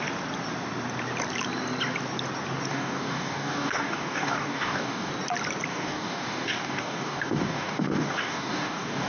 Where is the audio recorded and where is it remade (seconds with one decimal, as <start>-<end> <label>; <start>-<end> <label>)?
0.0-2.7 recorded; 2.7-5.1 remade; 5.1-5.7 recorded; 5.7-9.1 remade